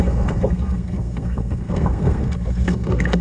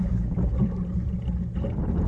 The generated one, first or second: first